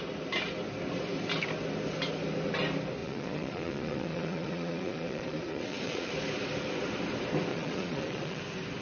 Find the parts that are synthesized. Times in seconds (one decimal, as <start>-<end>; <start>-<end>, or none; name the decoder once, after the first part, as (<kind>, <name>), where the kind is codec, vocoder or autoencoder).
3.0-6.1 (vocoder, Vocos); 7.5-8.4